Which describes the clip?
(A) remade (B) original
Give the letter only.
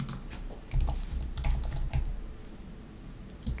B